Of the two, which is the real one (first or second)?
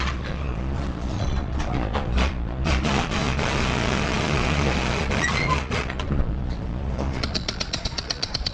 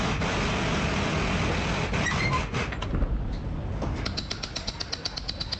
second